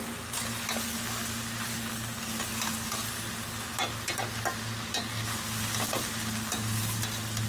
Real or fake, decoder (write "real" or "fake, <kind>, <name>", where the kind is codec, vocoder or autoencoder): real